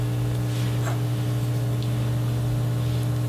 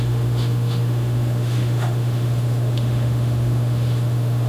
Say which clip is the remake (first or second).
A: second